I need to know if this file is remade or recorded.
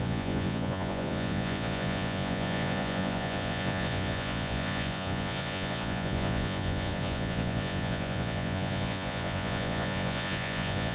remade